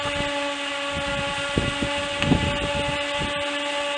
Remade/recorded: recorded